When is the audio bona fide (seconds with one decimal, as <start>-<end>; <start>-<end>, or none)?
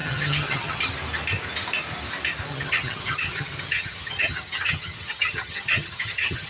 0.8-2.5